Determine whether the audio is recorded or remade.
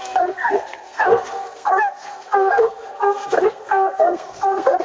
remade